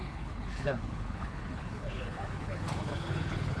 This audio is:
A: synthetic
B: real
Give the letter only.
A